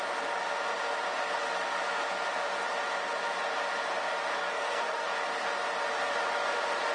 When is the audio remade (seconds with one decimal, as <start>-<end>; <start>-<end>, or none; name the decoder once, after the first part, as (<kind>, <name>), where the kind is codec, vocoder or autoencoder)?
4.4-5.1 (codec, SNAC)